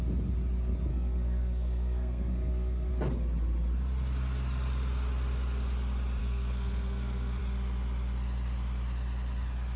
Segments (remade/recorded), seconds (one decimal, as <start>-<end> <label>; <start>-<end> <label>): 0.0-0.9 recorded; 0.9-2.9 remade; 2.9-6.2 recorded; 6.2-7.4 remade; 7.4-9.8 recorded